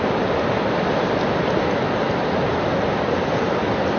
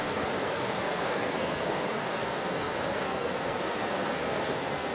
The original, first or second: first